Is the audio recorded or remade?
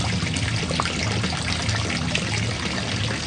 recorded